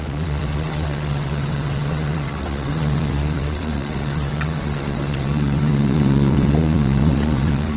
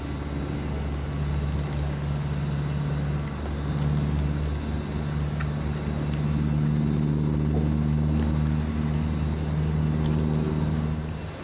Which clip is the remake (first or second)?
first